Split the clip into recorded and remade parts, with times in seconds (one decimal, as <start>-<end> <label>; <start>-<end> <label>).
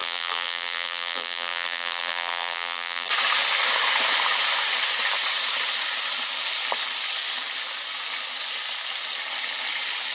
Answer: 0.0-3.1 remade; 3.1-10.1 recorded